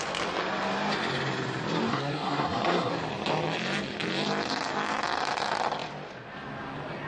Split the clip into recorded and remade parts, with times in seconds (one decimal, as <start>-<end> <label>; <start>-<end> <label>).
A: 0.0-1.9 recorded; 1.9-2.9 remade; 2.9-7.1 recorded